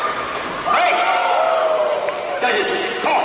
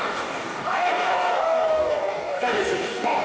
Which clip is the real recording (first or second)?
first